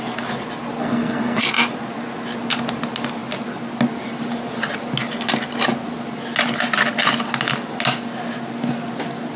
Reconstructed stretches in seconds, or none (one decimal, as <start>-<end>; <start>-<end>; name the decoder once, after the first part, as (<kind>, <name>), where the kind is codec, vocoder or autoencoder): 0.8-1.4 (codec, SNAC)